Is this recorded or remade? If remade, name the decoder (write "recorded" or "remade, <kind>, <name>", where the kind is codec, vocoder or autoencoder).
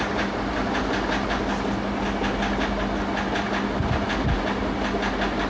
recorded